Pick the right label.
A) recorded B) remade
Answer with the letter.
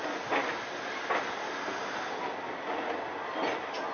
A